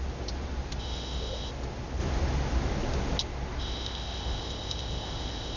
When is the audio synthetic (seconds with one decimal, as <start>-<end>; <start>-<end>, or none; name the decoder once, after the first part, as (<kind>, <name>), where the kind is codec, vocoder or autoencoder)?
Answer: 0.8-1.5 (codec, ZipCodec); 3.6-5.6